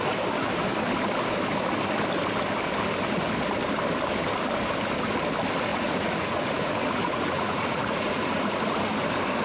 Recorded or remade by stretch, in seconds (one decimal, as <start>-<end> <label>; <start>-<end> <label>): 0.0-5.7 recorded; 5.7-8.8 remade; 8.8-9.4 recorded